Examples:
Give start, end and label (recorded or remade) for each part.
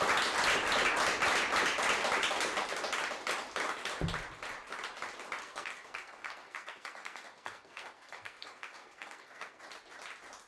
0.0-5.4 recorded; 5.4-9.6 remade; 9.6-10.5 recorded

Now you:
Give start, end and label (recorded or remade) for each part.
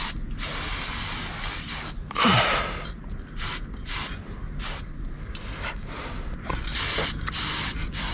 0.0-2.0 recorded; 2.0-3.8 remade; 3.8-8.1 recorded